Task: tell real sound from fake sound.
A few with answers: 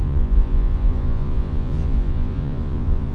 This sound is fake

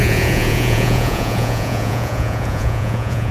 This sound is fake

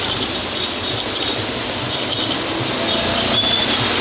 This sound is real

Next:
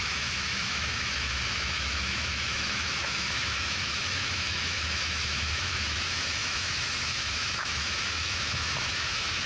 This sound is fake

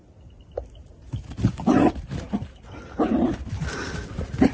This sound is real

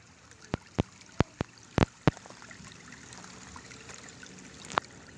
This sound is real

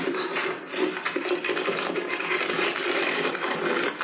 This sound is real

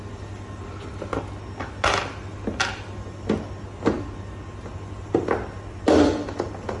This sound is real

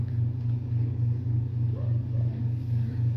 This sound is fake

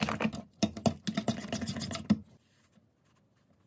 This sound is real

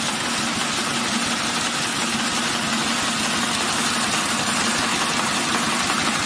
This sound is real